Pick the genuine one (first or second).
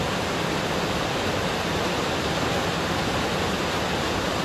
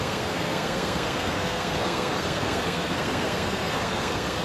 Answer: first